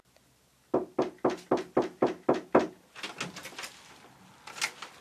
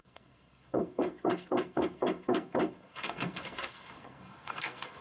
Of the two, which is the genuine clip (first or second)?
first